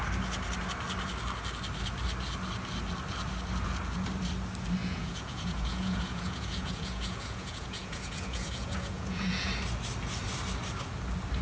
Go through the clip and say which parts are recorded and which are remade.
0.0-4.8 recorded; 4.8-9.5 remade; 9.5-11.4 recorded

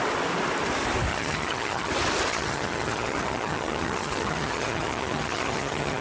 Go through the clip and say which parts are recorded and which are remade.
0.0-1.1 recorded; 1.1-1.9 remade; 1.9-2.3 recorded; 2.3-6.0 remade

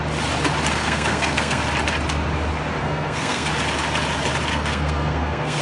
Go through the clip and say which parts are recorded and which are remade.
0.0-0.8 recorded; 0.8-1.6 remade; 1.6-2.8 recorded; 2.8-3.5 remade; 3.5-4.5 recorded; 4.5-5.6 remade

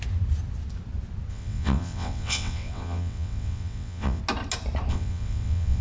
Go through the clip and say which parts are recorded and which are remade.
0.0-1.3 recorded; 1.3-4.2 remade; 4.2-4.9 recorded; 4.9-5.8 remade

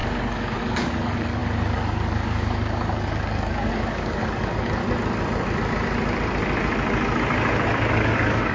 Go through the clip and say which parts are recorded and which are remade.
0.0-4.8 remade; 4.8-7.9 recorded; 7.9-8.5 remade

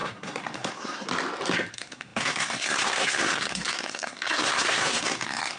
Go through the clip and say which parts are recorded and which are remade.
0.0-1.1 remade; 1.1-1.7 recorded; 1.7-5.6 remade